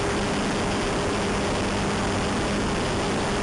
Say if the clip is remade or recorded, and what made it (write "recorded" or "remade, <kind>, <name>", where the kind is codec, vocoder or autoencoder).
recorded